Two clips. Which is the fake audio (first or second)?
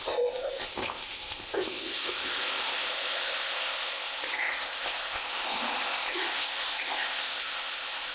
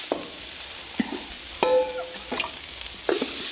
first